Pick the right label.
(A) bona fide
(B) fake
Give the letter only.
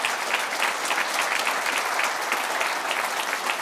A